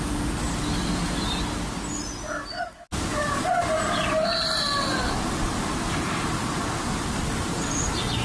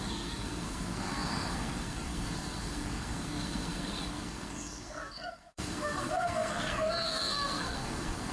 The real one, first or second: first